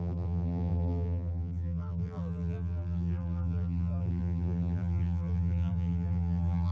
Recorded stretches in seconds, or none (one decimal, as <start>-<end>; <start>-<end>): none